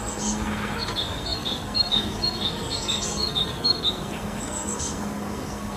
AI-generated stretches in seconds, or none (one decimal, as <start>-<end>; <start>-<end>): 0.0-5.8